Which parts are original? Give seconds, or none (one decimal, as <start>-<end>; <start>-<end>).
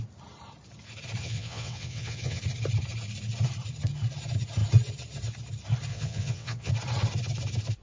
0.0-1.2; 2.4-5.9; 6.7-7.8